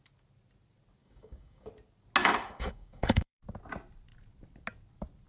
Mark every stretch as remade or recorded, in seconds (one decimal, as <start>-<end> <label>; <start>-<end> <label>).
0.0-1.0 recorded; 1.0-1.7 remade; 1.7-2.2 recorded; 2.2-3.4 remade; 3.4-5.3 recorded